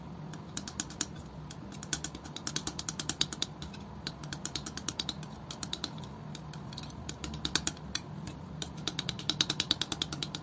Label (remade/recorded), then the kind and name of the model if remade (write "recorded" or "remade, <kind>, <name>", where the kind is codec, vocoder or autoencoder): recorded